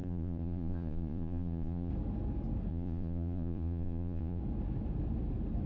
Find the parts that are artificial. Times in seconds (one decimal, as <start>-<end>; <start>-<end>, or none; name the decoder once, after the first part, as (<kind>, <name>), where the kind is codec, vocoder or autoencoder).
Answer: 0.0-1.9 (vocoder, Vocos); 2.7-4.4